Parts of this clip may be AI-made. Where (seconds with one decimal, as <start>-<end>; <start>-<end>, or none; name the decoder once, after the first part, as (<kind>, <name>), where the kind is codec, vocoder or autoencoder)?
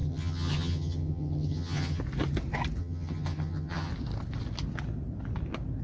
0.0-2.0 (vocoder, HiFi-GAN); 2.8-3.9